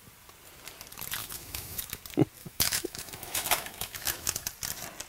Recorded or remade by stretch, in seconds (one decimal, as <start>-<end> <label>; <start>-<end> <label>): 0.0-1.2 recorded; 1.2-2.0 remade; 2.0-2.4 recorded; 2.4-4.5 remade; 4.5-5.1 recorded

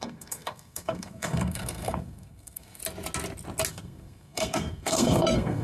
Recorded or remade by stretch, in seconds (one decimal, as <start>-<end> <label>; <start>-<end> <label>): 0.0-2.8 remade; 2.8-3.7 recorded; 3.7-5.6 remade

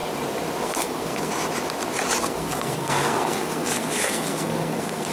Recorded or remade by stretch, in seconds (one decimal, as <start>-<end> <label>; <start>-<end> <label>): 0.0-0.6 recorded; 0.6-1.3 remade; 1.3-2.2 recorded; 2.2-5.1 remade

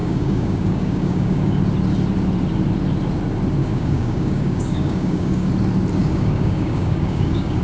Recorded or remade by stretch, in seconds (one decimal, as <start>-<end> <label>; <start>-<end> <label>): 0.0-1.6 remade; 1.6-3.6 recorded; 3.6-5.5 remade; 5.5-6.0 recorded; 6.0-7.6 remade

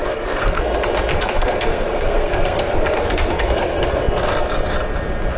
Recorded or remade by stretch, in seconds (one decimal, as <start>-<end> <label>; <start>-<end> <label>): 0.0-0.6 remade; 0.6-1.1 recorded; 1.1-4.0 remade; 4.0-5.4 recorded

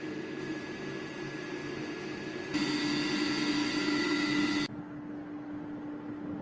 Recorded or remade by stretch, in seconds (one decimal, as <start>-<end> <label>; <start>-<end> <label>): 0.0-3.6 recorded; 3.6-4.8 remade; 4.8-6.4 recorded

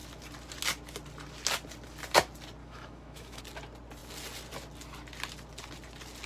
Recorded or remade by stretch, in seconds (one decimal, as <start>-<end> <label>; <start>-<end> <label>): 0.0-2.6 recorded; 2.6-3.4 remade; 3.4-6.3 recorded

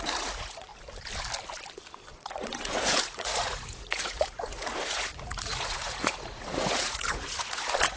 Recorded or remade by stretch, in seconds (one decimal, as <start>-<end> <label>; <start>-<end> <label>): 0.0-0.7 remade; 0.7-2.1 recorded; 2.1-8.0 remade